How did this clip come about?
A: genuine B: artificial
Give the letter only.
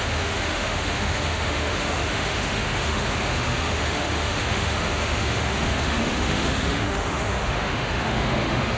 B